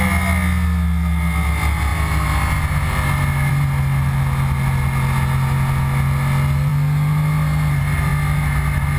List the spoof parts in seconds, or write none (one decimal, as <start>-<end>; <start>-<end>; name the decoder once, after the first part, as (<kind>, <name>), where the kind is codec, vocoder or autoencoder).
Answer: none